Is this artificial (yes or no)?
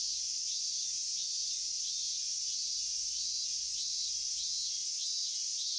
no